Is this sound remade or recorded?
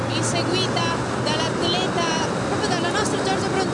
recorded